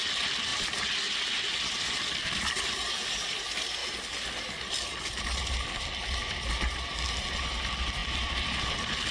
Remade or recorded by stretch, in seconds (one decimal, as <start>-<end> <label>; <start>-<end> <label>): 0.0-9.1 recorded